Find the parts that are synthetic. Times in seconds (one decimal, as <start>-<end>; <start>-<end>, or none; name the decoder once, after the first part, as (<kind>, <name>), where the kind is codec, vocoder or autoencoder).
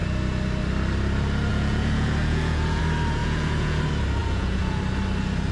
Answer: 1.5-2.8 (vocoder, Vocos); 3.2-3.8; 4.2-4.8